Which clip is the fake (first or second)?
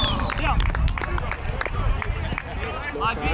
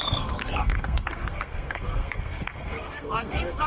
second